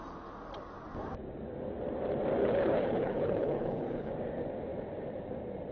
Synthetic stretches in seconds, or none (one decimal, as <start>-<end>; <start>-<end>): 2.4-4.1